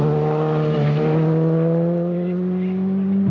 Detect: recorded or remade recorded